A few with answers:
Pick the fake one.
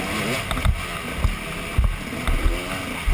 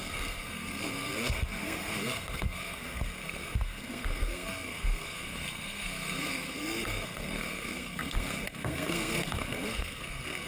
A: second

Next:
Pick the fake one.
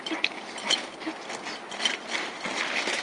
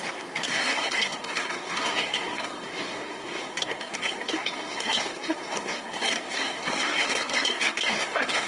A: second